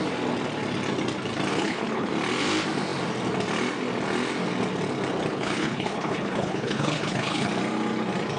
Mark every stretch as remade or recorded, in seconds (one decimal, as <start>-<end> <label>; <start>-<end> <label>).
0.0-1.5 recorded; 1.5-2.1 remade; 2.1-5.3 recorded; 5.3-7.5 remade; 7.5-8.4 recorded